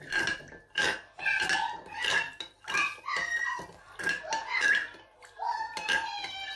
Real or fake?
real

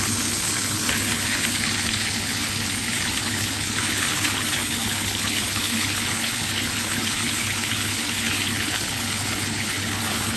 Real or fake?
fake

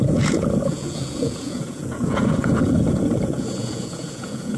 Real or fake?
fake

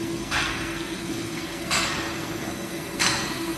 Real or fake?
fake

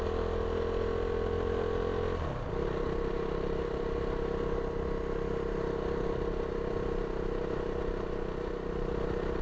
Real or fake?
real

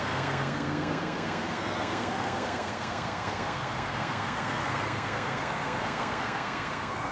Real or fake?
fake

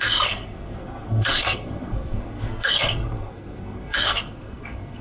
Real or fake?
fake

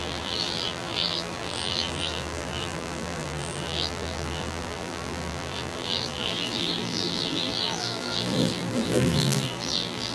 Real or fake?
fake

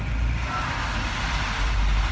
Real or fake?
real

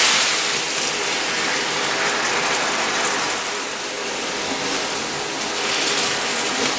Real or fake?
real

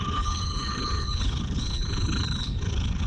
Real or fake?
fake